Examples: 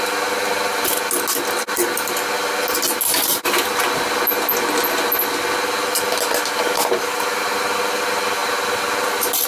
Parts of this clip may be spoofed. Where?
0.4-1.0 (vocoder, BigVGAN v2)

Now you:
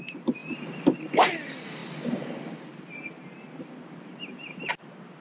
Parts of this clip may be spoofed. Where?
0.0-0.4 (vocoder, BigVGAN v2); 1.3-1.8; 3.6-5.2